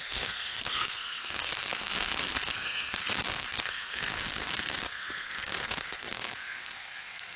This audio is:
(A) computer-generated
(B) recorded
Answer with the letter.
A